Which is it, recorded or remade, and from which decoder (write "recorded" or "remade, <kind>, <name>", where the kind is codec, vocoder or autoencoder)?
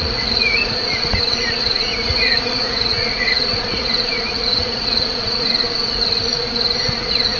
remade, vocoder, Vocos